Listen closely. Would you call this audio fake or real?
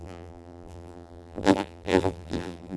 fake